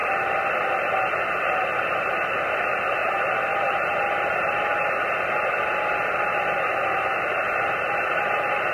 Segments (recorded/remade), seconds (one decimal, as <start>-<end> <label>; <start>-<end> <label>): 0.0-8.7 recorded